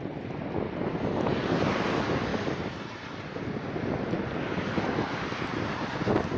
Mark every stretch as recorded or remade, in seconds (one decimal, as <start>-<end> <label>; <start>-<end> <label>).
0.0-6.4 recorded